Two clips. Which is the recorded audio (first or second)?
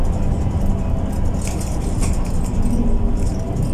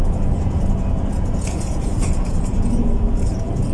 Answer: first